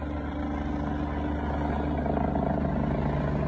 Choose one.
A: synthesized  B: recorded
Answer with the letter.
B